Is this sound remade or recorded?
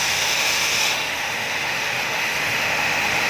remade